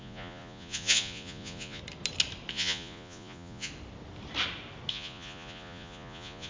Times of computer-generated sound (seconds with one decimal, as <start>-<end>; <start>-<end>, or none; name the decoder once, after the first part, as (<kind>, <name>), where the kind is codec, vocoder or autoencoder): 0.0-1.8 (vocoder, Vocos); 2.5-3.7; 4.9-6.5